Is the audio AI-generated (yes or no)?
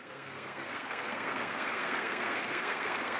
yes